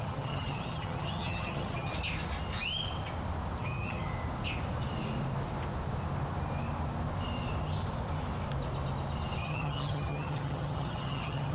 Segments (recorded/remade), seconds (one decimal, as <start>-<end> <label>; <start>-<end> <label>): 0.0-1.9 remade; 1.9-3.6 recorded; 3.6-4.1 remade; 4.1-9.4 recorded; 9.4-11.5 remade

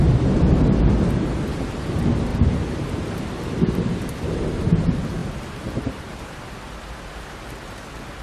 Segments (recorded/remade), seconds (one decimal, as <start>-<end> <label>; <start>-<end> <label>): 0.0-5.2 recorded; 5.2-7.1 remade; 7.1-8.2 recorded

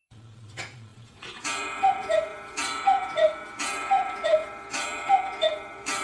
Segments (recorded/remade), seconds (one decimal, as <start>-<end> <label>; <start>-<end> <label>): 0.0-6.0 remade

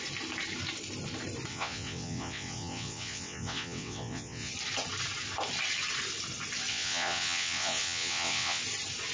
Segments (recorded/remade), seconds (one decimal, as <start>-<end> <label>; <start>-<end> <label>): 0.0-1.5 recorded; 1.5-4.5 remade; 4.5-6.7 recorded; 6.7-8.6 remade; 8.6-9.1 recorded

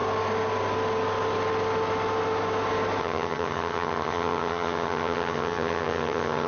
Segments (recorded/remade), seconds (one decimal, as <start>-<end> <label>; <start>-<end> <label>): 0.0-3.0 recorded; 3.0-6.5 remade

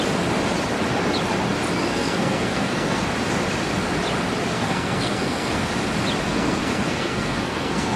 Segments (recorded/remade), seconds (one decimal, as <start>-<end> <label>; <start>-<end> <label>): 0.0-1.9 recorded; 1.9-3.0 remade; 3.0-4.5 recorded; 4.5-5.7 remade; 5.7-6.3 recorded; 6.3-8.0 remade

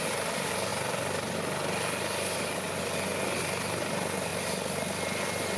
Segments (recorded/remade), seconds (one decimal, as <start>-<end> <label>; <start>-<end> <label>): 0.0-5.6 recorded

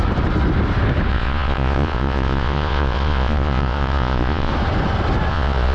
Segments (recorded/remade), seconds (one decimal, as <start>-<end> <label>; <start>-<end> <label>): 0.0-1.1 recorded; 1.1-4.5 remade; 4.5-5.3 recorded; 5.3-5.7 remade